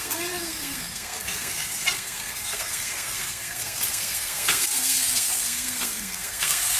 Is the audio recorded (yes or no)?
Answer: no